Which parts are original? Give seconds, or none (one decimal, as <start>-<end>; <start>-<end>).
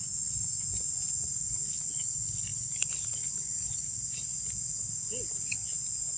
0.0-2.5; 3.8-4.3; 5.3-6.2